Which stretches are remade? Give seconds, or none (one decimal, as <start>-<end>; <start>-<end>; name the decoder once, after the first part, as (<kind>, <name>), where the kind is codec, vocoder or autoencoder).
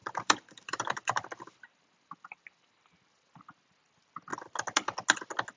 0.0-3.4 (vocoder, BigVGAN v2)